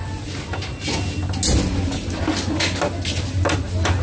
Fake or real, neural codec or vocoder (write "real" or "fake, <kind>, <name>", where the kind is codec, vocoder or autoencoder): real